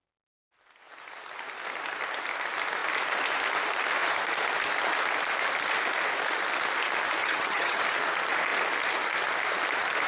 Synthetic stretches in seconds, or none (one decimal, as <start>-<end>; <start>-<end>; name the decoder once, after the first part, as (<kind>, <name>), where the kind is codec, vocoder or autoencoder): 7.2-7.8 (vocoder, HiFi-GAN)